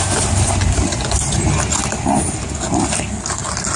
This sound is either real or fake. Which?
real